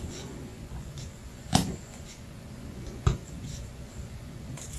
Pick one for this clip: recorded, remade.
remade